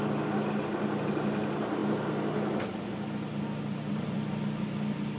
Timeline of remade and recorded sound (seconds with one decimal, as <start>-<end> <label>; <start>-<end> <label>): 0.0-5.2 recorded